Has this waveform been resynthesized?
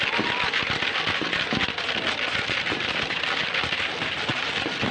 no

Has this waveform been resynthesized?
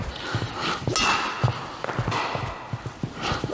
no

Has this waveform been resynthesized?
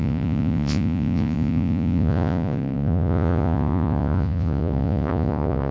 yes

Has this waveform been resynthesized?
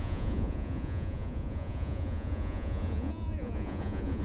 yes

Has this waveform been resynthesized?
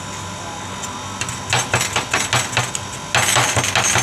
no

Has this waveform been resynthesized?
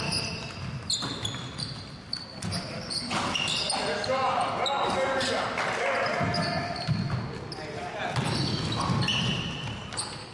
no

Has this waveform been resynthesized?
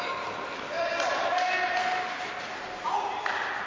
no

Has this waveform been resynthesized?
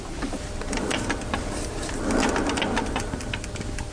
no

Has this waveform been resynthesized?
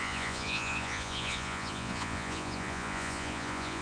yes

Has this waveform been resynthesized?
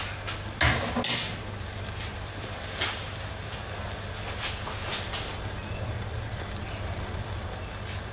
no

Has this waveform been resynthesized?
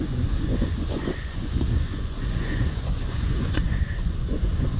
yes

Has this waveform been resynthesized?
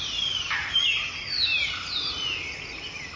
no